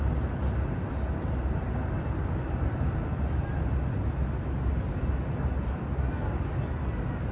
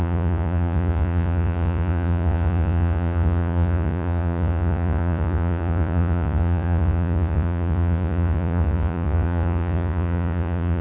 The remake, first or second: second